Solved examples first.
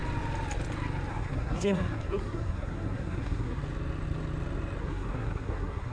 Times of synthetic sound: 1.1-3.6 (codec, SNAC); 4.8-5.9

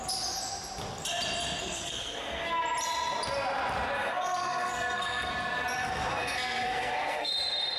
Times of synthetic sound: 1.6-2.5 (codec, SNAC); 4.0-5.3; 5.8-7.3

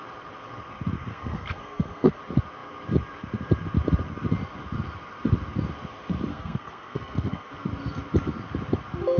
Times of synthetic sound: 1.1-2.2 (codec, SNAC); 6.3-7.5

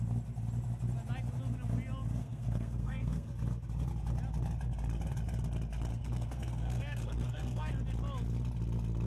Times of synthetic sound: 2.2-3.3 (codec, SNAC); 5.9-7.7

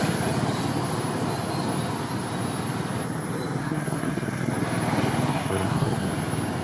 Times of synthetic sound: 3.6-4.5 (codec, SNAC); 5.3-6.1

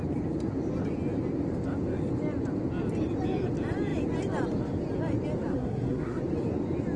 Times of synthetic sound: 5.5-6.2 (codec, SNAC)

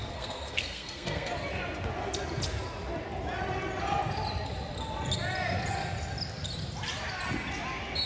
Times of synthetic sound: 0.0-1.3 (codec, SNAC)

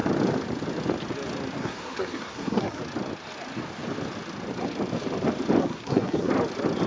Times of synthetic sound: 1.6-2.8 (codec, SNAC); 5.6-6.3